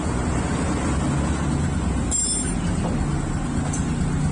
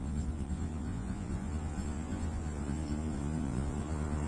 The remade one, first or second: second